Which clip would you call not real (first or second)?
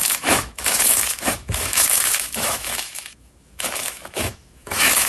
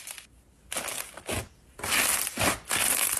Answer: first